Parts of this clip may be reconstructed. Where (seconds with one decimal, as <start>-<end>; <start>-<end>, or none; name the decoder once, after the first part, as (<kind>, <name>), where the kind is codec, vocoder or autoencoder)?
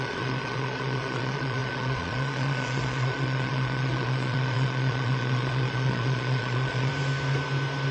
0.0-6.9 (vocoder, Vocos)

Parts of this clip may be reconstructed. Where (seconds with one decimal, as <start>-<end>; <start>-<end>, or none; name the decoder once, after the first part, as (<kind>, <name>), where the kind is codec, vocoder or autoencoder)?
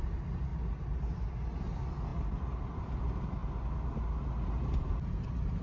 none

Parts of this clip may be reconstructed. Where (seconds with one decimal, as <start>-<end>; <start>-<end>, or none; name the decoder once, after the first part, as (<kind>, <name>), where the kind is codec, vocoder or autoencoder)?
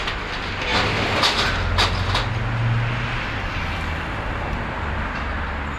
none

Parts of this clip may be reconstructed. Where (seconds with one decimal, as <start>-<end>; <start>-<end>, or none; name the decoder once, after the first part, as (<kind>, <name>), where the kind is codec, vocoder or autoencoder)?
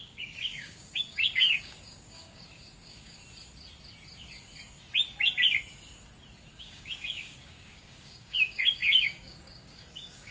0.0-3.2 (codec, DAC); 6.5-10.3